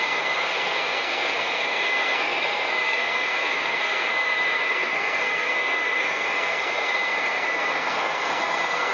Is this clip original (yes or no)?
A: no